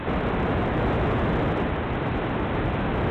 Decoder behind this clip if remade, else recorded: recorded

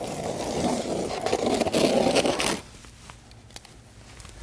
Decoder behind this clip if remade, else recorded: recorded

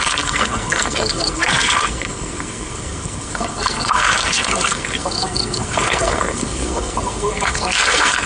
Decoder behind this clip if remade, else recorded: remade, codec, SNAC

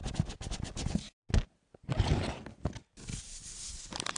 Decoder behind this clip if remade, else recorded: recorded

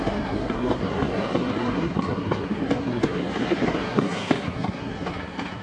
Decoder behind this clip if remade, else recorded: remade, codec, SNAC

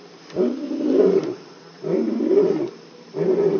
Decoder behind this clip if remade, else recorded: recorded